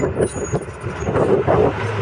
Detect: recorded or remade recorded